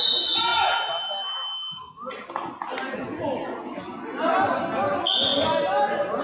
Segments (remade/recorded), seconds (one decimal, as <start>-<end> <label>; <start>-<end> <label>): 0.0-6.2 recorded